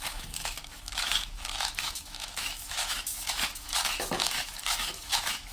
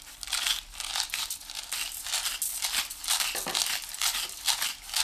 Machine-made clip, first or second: first